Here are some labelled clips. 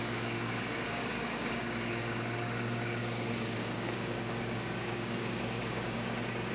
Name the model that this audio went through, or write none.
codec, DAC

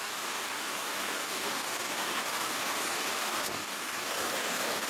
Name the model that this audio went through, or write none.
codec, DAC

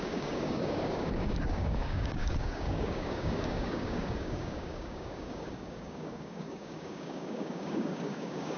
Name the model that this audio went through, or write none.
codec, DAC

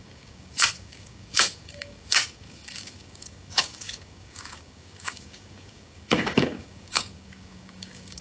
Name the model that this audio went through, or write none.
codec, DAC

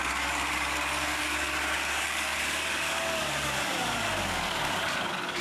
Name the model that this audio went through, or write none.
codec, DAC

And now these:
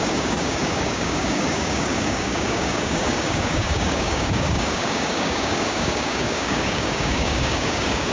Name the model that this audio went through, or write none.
codec, DAC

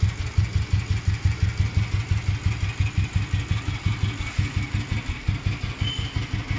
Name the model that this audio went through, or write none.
none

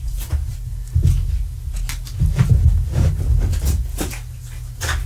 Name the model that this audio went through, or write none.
none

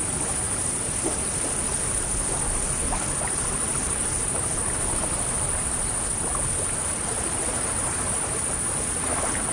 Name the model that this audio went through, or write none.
none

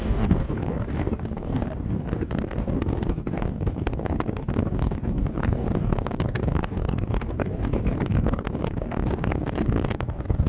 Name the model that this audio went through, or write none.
codec, DAC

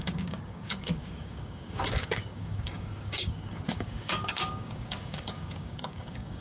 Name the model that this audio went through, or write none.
codec, DAC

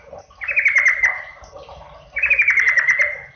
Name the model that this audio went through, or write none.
none